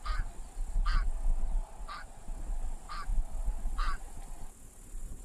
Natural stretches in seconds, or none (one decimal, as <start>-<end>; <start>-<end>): 0.0-5.2